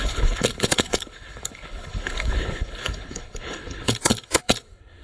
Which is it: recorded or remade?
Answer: remade